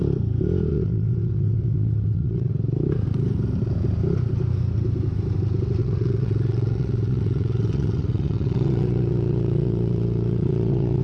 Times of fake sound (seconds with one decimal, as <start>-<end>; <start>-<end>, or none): 0.7-2.5; 5.8-11.0